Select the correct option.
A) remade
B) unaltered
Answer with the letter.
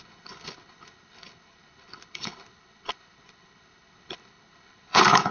A